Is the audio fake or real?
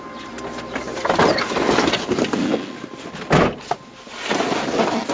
real